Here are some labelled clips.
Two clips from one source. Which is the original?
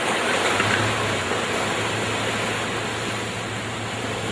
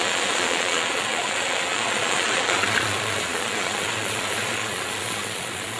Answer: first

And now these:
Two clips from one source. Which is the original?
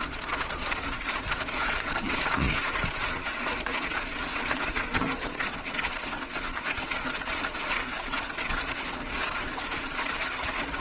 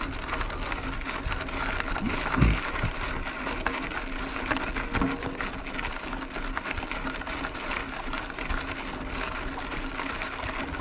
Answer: second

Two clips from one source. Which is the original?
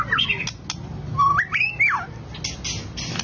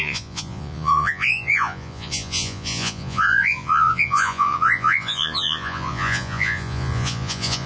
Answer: first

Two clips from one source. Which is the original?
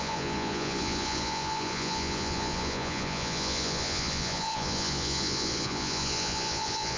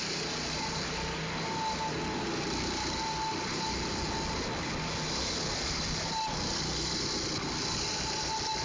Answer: second